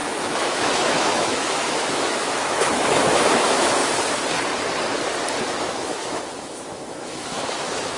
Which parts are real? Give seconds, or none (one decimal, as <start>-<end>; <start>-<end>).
3.8-5.6